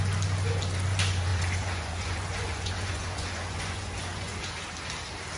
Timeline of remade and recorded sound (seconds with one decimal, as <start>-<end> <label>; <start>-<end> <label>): 0.0-1.3 recorded; 1.3-4.5 remade; 4.5-5.4 recorded